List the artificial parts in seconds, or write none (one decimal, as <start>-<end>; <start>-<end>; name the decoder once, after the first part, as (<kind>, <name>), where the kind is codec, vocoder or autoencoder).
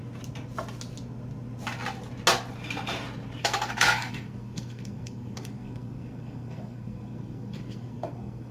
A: 3.4-8.5 (codec, SNAC)